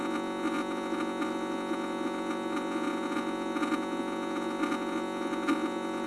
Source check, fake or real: fake